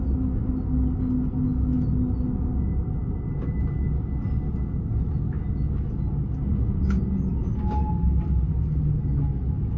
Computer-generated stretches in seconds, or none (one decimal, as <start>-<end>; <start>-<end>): none